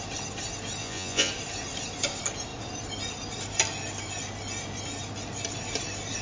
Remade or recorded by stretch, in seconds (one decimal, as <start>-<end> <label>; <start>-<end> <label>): 0.0-0.8 recorded; 0.8-1.3 remade; 1.3-6.2 recorded